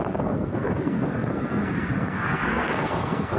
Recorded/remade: remade